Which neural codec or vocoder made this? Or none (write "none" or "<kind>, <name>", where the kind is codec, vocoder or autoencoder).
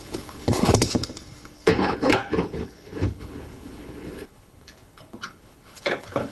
codec, HILCodec